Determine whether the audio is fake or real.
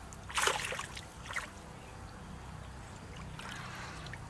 real